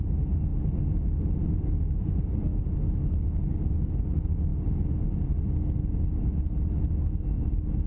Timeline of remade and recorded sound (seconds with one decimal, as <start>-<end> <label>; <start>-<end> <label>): 0.0-7.9 recorded